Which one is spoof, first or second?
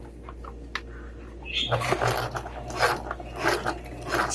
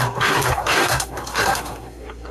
second